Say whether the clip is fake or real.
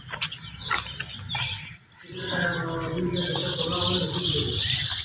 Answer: real